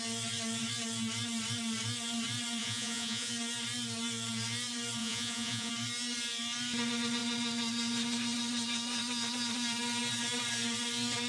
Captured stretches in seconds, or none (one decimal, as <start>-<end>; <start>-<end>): 0.0-2.6; 3.3-5.0; 5.7-11.3